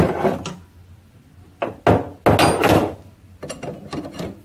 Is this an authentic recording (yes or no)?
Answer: yes